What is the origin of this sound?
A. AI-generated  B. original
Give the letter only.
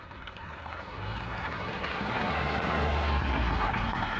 A